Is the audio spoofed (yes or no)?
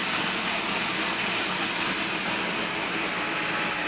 no